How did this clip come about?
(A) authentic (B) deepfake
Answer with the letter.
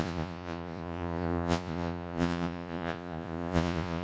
B